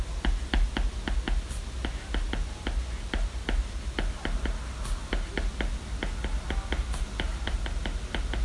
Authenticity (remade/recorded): recorded